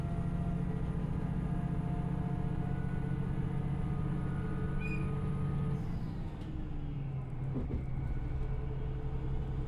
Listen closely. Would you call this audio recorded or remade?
recorded